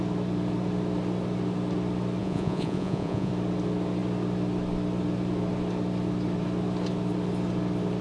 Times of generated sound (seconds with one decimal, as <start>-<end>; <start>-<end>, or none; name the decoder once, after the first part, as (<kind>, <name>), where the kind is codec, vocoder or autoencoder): 2.2-3.3 (vocoder, Vocos)